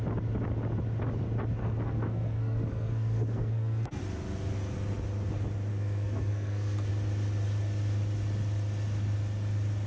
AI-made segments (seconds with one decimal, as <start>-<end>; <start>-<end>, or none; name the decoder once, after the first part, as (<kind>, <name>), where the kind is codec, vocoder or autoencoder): 1.6-4.0 (codec, SNAC); 5.7-6.9